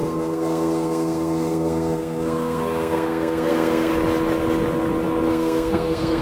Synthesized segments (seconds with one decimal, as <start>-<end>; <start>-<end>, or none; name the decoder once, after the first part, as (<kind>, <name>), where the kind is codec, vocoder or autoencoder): 0.0-3.9 (codec, SNAC); 5.3-6.2